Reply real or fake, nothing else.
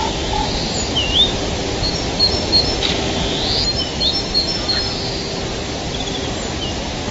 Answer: real